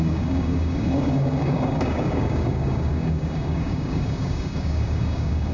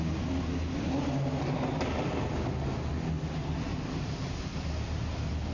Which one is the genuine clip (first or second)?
second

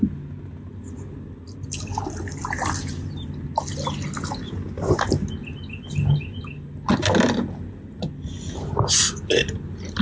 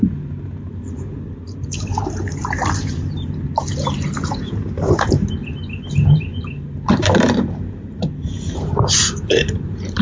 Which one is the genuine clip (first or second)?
first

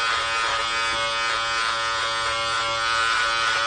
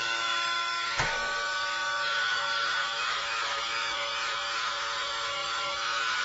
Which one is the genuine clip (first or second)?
first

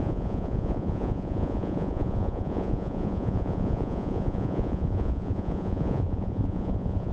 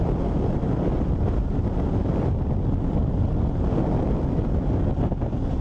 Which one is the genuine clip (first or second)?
second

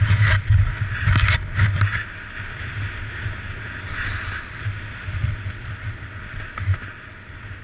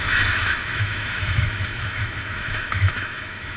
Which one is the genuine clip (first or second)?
first